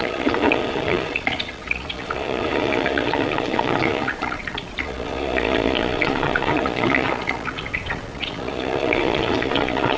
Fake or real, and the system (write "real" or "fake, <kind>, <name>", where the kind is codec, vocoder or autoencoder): fake, vocoder, Vocos